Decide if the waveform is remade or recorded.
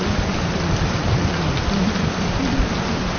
remade